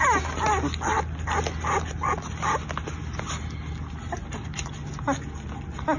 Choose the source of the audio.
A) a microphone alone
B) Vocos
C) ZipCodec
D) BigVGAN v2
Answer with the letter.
A